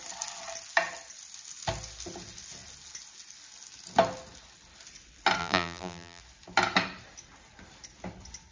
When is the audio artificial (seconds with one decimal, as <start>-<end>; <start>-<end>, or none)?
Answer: 5.4-6.2

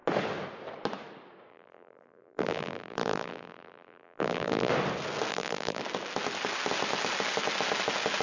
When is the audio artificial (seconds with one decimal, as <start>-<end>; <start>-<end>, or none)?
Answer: 1.5-4.7; 5.3-5.8

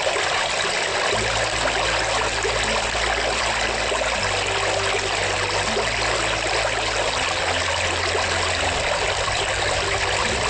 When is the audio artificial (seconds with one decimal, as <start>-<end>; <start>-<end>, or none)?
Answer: none

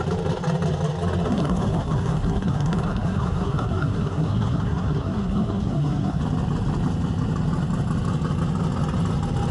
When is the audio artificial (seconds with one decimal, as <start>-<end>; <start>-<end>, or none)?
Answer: 1.3-6.2